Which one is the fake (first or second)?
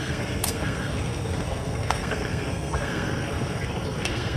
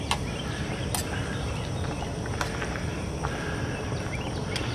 first